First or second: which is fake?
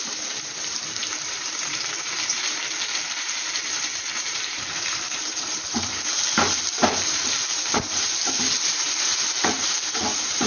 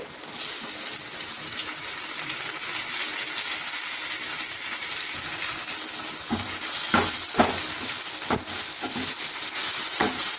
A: first